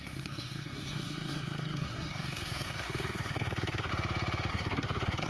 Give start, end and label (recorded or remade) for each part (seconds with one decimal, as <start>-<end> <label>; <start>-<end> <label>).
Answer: 0.0-3.9 remade; 3.9-4.5 recorded; 4.5-5.3 remade